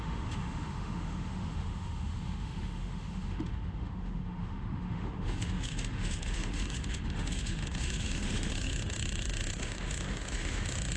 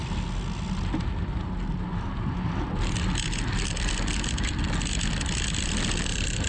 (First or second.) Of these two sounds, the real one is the second